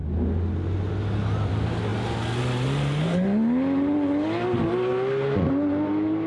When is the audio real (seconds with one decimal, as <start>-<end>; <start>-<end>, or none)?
0.0-6.3